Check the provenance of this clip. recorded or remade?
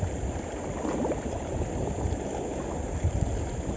remade